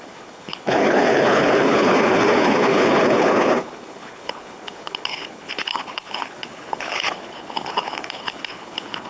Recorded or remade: remade